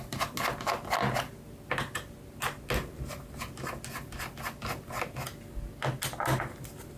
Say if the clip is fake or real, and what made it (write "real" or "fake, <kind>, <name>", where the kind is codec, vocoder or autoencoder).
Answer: real